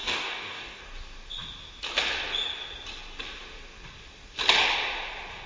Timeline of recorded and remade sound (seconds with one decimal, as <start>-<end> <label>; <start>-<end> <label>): 0.0-0.8 remade; 0.8-5.5 recorded